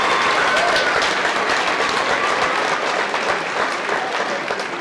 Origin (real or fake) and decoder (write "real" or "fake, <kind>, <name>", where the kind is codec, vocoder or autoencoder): real